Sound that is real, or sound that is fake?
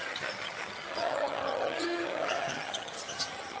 fake